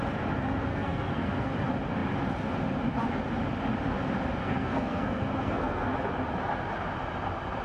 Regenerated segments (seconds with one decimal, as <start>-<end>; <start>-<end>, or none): 0.7-1.5; 4.4-5.9